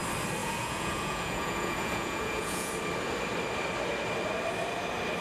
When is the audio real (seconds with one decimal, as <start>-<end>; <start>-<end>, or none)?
0.0-0.4; 2.7-5.2